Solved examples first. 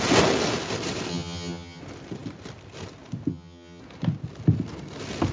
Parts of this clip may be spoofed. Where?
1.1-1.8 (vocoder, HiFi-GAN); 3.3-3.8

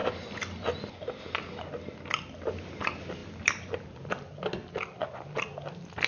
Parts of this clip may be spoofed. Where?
none